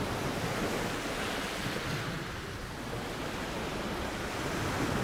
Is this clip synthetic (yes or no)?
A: no